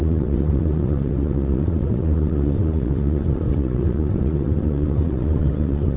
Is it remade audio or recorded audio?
remade